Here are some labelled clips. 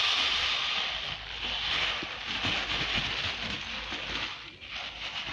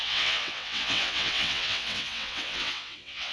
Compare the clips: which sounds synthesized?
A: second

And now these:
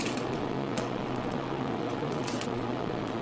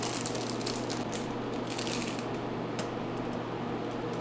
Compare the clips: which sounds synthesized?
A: first